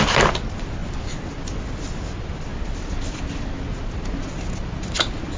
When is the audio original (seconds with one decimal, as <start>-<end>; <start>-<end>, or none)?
0.0-5.4